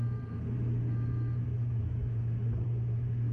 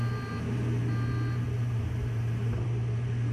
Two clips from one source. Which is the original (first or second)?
second